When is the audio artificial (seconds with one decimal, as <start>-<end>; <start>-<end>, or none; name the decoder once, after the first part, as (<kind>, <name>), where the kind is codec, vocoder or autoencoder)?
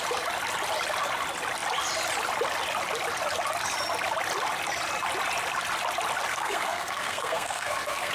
6.3-8.1 (codec, SNAC)